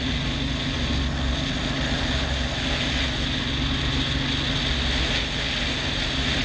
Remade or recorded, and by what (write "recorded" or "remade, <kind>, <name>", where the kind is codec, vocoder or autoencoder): recorded